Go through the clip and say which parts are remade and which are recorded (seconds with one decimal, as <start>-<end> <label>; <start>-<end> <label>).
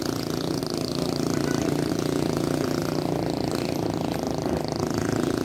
0.0-0.6 remade; 0.6-1.9 recorded; 1.9-2.8 remade; 2.8-4.8 recorded; 4.8-5.4 remade